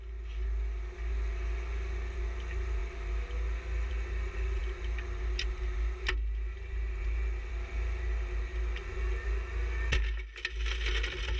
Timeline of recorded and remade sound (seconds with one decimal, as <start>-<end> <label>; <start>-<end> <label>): 0.0-11.4 recorded